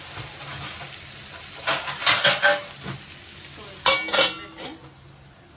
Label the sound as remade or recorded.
recorded